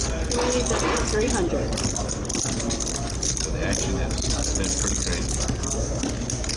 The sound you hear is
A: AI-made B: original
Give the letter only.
B